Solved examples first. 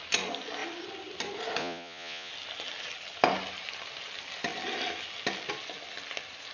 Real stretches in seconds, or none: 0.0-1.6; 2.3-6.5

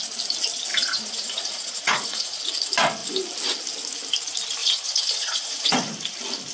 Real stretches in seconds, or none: 0.0-0.7; 2.4-4.6; 5.7-6.5

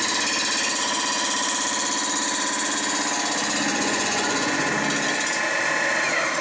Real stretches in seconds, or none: 0.0-3.7; 4.7-6.4

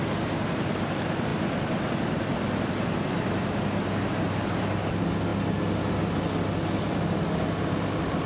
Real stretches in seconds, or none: 0.0-8.3

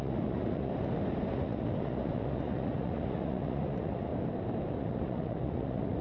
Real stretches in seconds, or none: 0.7-1.3; 4.1-4.7

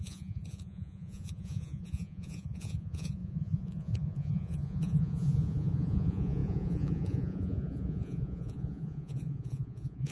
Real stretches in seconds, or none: none

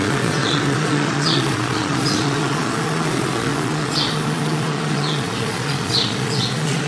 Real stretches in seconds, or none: none